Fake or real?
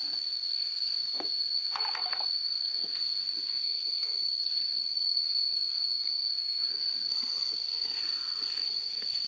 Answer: fake